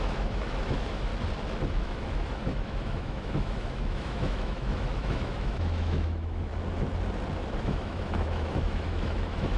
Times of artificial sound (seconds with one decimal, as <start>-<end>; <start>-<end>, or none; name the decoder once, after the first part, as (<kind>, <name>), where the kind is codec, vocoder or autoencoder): 0.0-1.1 (autoencoder, DAC-VAE); 1.7-6.5; 7.6-9.6